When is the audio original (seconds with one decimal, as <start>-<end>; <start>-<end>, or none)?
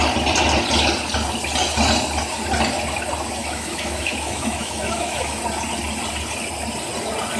0.0-3.4; 5.4-7.4